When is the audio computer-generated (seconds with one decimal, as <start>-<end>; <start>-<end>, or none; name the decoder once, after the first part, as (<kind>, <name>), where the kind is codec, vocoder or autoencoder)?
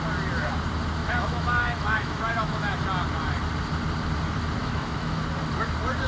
1.0-2.8 (autoencoder, DAC-VAE); 4.6-5.2